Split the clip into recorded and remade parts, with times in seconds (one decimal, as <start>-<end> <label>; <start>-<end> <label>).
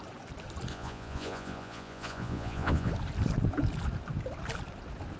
0.0-0.7 recorded; 0.7-2.9 remade; 2.9-5.2 recorded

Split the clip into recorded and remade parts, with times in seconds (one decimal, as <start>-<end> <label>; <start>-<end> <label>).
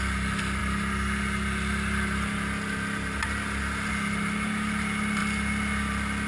0.0-6.3 recorded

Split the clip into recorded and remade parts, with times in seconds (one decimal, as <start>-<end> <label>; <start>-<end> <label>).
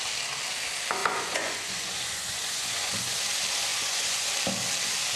0.0-1.0 recorded; 1.0-3.2 remade; 3.2-3.7 recorded; 3.7-4.3 remade; 4.3-5.2 recorded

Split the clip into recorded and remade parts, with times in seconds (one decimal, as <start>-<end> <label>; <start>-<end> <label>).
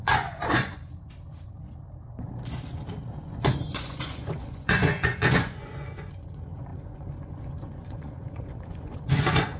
0.0-0.8 remade; 0.8-3.1 recorded; 3.1-9.6 remade